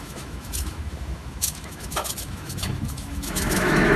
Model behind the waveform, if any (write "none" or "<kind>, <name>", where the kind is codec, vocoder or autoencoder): autoencoder, DAC-VAE